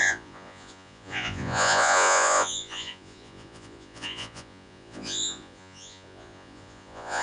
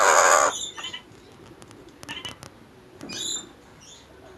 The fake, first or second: first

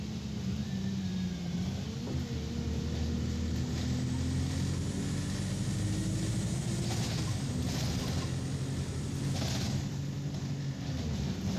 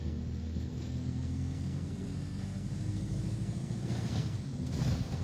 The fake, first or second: second